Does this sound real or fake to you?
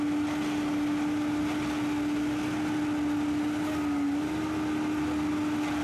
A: real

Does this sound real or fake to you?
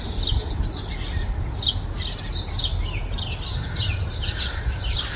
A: real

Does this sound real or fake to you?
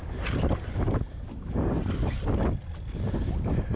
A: real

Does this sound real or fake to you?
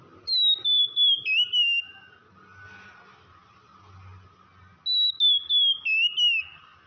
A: real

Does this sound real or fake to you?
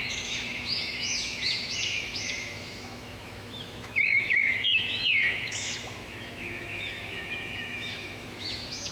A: fake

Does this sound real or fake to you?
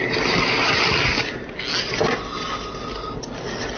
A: real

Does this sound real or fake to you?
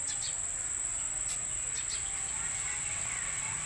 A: real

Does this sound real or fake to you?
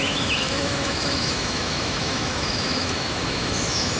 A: fake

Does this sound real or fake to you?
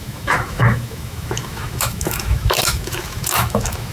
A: fake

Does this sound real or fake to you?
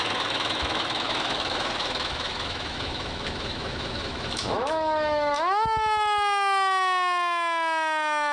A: fake